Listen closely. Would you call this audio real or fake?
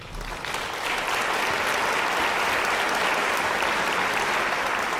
real